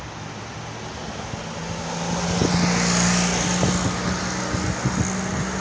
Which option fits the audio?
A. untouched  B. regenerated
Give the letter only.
A